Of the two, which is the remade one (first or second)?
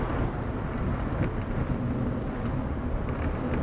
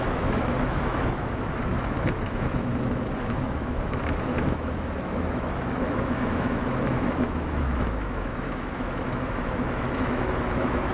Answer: second